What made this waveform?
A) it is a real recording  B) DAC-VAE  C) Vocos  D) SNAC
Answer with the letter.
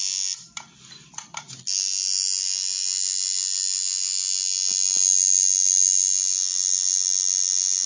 A